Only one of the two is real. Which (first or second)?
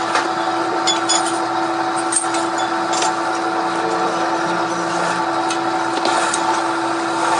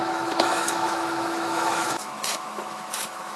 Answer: first